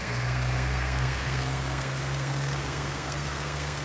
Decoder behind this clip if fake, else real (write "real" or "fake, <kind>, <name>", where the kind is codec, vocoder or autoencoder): fake, codec, SNAC